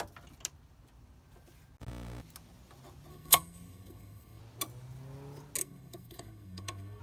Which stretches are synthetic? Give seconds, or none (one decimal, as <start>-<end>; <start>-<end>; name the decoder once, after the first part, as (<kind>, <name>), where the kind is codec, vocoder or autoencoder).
3.1-4.4 (codec, SNAC); 5.6-7.0